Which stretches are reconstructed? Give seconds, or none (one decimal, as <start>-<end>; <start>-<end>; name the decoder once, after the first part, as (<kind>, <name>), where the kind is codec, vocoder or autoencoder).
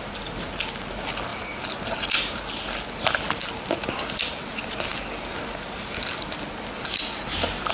none